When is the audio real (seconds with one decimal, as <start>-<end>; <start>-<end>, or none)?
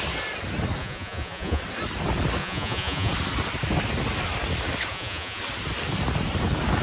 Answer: 0.0-0.8; 1.6-2.4; 3.1-4.9; 5.4-6.8